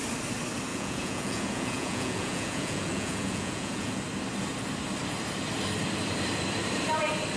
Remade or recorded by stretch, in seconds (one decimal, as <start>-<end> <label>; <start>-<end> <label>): 0.0-0.7 recorded; 0.7-4.0 remade; 4.0-7.4 recorded